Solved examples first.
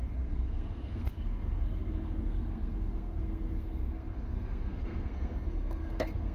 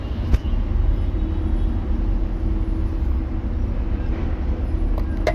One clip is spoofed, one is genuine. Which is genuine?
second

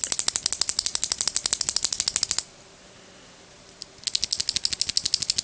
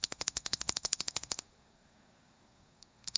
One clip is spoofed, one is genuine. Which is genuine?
first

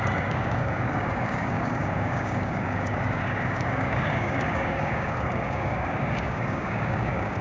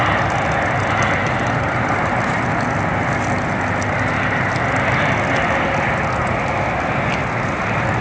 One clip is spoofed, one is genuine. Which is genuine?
second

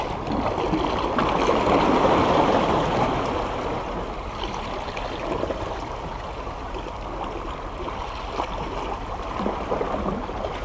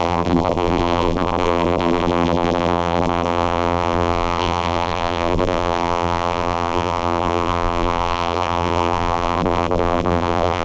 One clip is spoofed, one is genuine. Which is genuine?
first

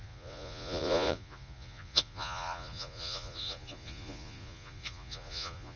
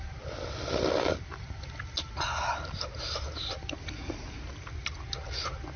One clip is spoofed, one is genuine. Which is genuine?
second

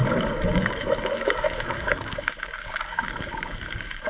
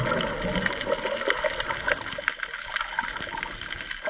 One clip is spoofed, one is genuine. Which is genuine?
second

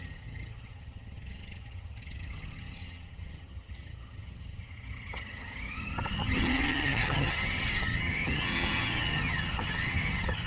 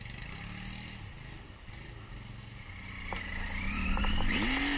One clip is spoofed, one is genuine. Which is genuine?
second